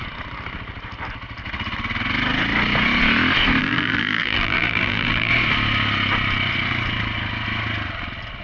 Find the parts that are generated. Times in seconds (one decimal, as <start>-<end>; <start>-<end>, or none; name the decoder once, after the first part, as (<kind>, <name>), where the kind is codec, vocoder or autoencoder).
3.6-5.3 (vocoder, BigVGAN v2)